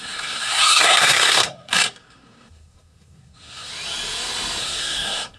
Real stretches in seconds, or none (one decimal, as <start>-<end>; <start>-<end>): 3.7-4.6